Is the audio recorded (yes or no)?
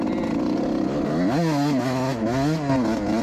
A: yes